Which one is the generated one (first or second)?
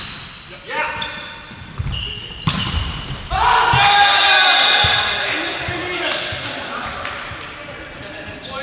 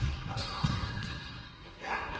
second